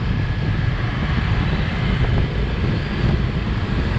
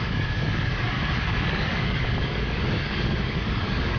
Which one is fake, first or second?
second